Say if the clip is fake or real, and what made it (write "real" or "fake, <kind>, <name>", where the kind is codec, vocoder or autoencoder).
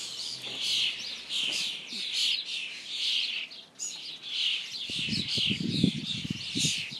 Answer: real